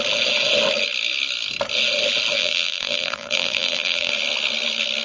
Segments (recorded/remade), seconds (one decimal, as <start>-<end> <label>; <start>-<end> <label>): 0.0-2.4 recorded; 2.4-4.1 remade; 4.1-5.0 recorded